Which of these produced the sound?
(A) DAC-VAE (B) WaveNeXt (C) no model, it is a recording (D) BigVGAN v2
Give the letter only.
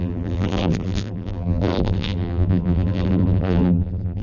D